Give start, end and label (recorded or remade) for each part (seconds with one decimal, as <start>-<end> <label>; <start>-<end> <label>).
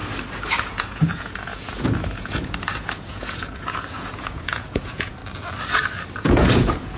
0.0-0.7 recorded; 0.7-5.2 remade; 5.2-6.1 recorded; 6.1-7.0 remade